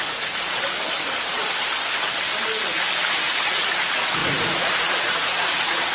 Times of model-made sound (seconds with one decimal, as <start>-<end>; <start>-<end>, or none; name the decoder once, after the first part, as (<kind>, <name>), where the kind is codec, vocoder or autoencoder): 0.0-0.6 (vocoder, Vocos); 4.2-5.9